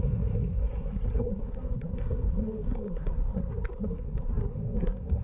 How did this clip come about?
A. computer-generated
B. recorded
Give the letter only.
A